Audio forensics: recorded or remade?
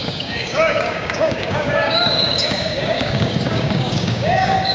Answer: remade